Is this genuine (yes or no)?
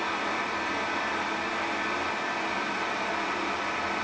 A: yes